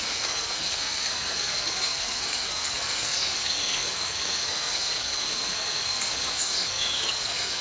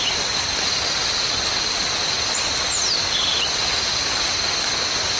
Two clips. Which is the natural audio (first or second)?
second